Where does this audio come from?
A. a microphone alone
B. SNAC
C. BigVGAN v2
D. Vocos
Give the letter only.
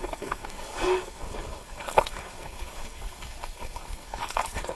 B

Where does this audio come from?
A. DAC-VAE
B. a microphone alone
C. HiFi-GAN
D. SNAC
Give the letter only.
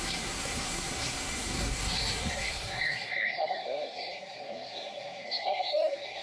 D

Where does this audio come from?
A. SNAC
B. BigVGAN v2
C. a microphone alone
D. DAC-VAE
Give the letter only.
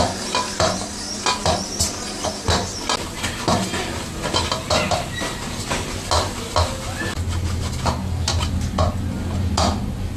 C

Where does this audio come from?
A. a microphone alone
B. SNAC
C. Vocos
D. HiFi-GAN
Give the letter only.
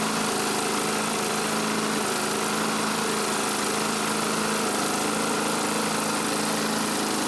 A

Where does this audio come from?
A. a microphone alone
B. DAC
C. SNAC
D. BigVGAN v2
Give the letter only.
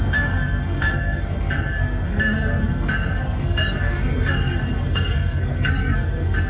C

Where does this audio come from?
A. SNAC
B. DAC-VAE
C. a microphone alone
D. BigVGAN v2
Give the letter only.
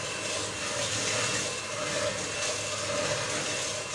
C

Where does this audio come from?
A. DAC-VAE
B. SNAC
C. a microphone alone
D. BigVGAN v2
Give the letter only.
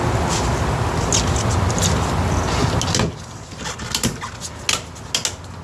C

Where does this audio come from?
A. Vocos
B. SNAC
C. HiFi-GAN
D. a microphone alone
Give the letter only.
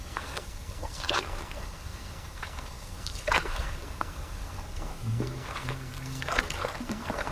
B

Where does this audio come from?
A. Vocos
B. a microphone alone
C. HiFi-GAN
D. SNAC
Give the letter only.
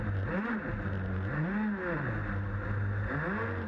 B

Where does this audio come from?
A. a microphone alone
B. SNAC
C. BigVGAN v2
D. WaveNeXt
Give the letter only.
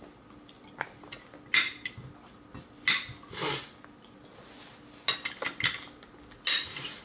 A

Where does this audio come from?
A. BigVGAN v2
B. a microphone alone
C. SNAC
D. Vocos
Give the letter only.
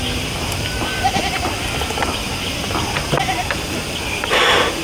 B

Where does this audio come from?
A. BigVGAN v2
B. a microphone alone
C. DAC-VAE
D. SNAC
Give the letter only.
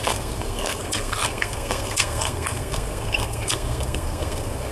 D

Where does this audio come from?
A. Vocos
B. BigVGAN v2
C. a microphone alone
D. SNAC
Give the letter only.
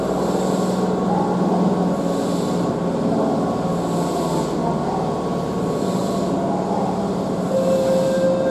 C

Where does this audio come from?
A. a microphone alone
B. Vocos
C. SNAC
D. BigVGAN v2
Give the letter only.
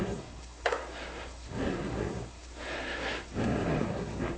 C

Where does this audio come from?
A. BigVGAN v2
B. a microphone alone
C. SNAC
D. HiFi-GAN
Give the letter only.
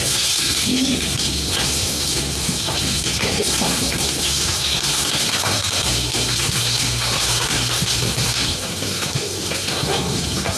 C